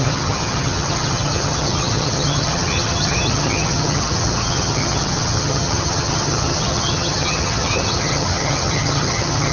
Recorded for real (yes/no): no